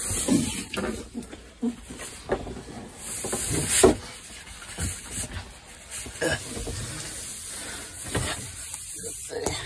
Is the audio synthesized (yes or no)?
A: no